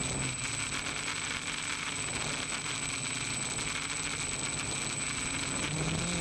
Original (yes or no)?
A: yes